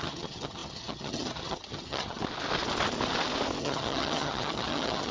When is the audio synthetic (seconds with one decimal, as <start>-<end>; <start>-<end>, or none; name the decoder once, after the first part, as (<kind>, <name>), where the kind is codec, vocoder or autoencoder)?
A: 0.0-2.2 (vocoder, HiFi-GAN); 3.6-5.1